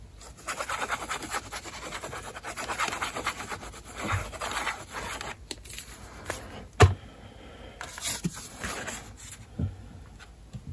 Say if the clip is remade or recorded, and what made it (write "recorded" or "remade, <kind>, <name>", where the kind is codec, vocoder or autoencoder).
recorded